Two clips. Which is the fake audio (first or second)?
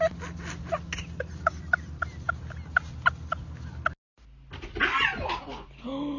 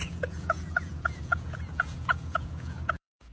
second